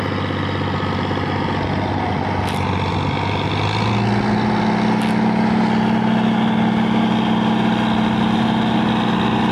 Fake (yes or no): no